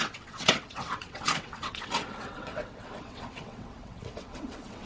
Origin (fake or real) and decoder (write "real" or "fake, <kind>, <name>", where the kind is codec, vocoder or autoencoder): fake, vocoder, WaveNeXt